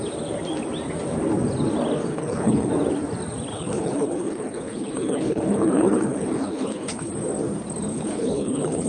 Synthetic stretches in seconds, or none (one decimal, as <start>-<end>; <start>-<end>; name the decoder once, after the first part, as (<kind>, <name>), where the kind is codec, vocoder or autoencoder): 2.1-2.7 (codec, HILCodec); 3.5-7.1; 7.9-8.9